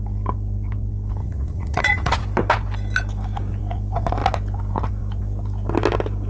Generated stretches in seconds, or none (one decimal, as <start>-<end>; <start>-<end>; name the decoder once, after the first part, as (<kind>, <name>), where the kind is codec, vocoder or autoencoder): 1.2-2.2 (vocoder, Vocos)